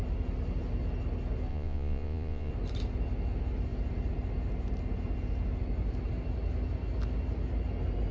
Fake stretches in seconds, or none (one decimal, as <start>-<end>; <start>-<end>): 1.5-2.5